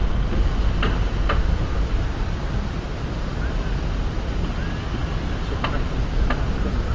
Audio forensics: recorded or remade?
recorded